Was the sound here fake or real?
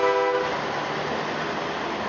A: real